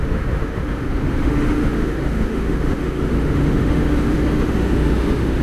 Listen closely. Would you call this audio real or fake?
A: fake